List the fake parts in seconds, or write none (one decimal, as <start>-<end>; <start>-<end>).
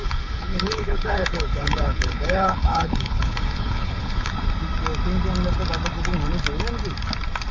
0.0-4.3